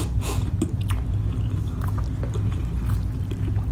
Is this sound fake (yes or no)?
no